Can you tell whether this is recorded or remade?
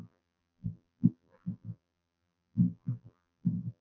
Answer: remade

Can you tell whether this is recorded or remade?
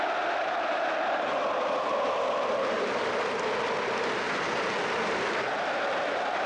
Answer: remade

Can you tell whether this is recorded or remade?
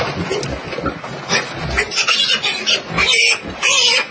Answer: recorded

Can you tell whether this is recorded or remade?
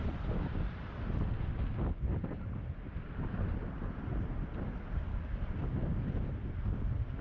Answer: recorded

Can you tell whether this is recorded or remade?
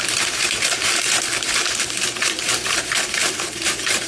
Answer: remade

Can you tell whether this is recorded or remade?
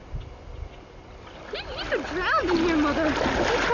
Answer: recorded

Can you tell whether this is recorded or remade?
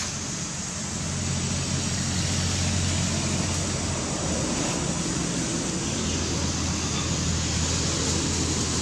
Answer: recorded